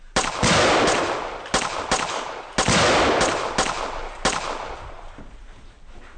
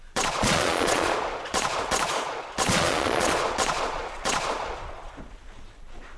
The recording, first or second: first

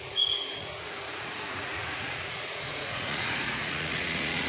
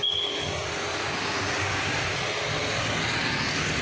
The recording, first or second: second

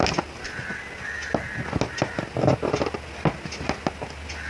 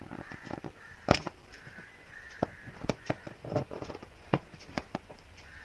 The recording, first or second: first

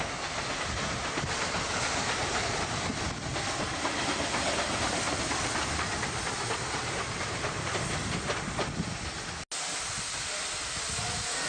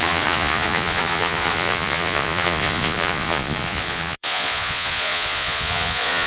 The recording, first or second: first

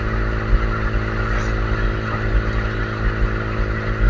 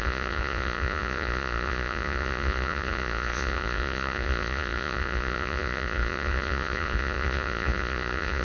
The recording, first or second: first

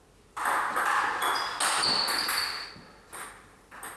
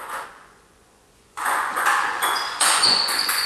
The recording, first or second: first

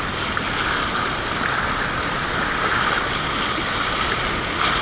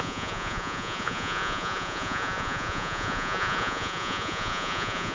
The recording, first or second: first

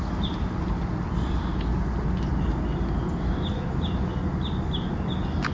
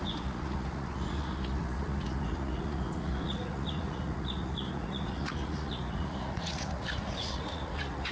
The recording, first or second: first